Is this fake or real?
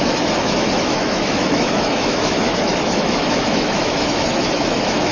fake